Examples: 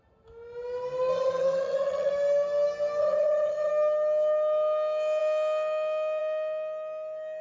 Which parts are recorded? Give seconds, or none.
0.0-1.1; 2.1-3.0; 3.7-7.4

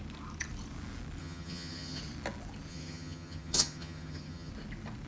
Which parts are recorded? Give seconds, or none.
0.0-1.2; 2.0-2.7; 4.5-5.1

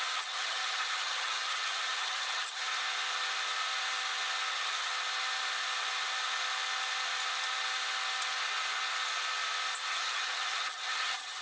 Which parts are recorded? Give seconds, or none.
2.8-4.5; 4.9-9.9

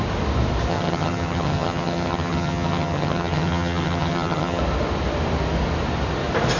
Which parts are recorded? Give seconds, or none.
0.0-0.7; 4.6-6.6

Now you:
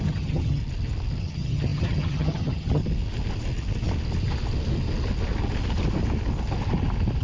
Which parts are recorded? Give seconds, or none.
0.6-1.2; 2.8-7.2